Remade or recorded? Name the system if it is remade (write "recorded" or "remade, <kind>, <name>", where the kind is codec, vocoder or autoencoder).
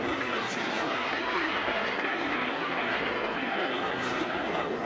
remade, codec, SNAC